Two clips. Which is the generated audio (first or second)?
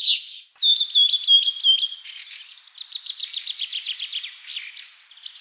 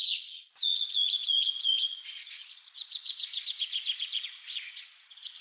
second